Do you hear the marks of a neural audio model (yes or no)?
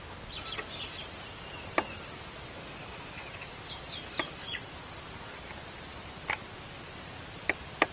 no